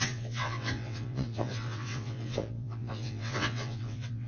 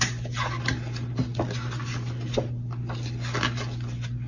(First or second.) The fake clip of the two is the first